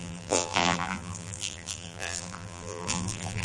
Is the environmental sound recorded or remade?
remade